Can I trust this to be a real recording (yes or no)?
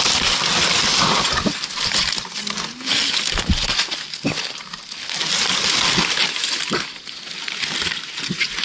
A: yes